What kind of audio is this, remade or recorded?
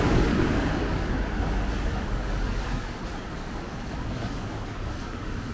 remade